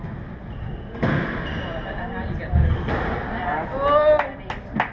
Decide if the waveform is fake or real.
real